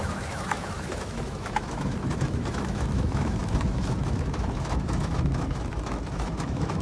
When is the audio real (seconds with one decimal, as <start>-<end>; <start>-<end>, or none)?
none